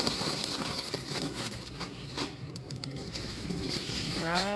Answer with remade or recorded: remade